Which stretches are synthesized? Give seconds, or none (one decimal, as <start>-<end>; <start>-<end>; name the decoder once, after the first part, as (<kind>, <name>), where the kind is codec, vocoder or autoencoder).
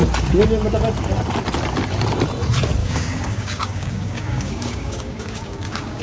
2.8-6.0 (codec, DAC)